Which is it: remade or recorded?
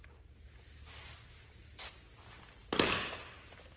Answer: recorded